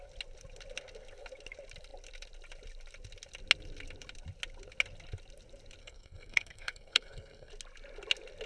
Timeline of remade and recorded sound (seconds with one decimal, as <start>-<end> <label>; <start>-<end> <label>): 0.0-5.8 recorded; 5.8-7.5 remade; 7.5-8.5 recorded